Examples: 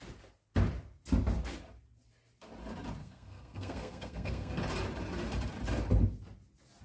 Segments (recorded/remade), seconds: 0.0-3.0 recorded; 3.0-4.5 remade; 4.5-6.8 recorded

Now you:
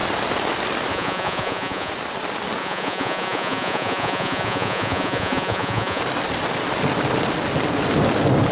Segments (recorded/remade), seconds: 0.0-0.9 recorded; 0.9-1.9 remade; 1.9-2.6 recorded; 2.6-6.0 remade; 6.0-8.5 recorded